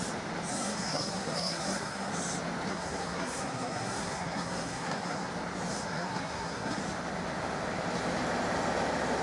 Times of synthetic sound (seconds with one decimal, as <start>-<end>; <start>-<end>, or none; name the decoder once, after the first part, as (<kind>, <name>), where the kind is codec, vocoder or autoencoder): 0.5-2.1 (codec, SNAC); 2.7-5.3; 5.7-6.8